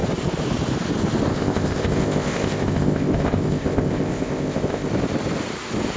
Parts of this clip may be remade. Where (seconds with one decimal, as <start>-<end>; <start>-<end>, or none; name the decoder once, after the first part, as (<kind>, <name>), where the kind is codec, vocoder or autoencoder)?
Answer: 1.3-4.9 (codec, ZipCodec)